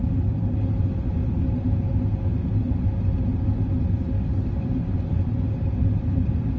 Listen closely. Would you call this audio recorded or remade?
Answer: recorded